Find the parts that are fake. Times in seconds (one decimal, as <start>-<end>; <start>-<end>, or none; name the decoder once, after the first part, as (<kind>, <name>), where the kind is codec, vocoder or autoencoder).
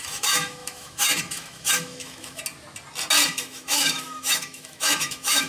0.0-2.4 (autoencoder, DAC-VAE); 3.3-5.5